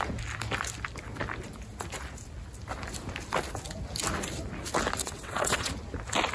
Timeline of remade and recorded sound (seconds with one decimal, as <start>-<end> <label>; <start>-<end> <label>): 0.0-5.0 recorded; 5.0-5.7 remade; 5.7-6.3 recorded